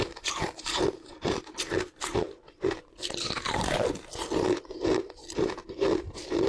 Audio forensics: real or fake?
fake